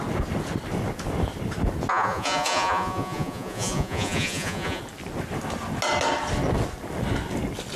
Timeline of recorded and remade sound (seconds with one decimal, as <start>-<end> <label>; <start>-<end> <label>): 0.0-1.9 recorded; 1.9-4.8 remade; 4.8-7.8 recorded